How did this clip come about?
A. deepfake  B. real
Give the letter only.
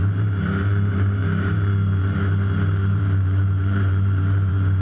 A